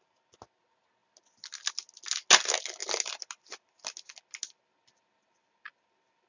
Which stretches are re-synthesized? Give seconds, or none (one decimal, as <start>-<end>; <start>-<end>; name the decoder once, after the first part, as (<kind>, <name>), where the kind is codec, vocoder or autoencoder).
none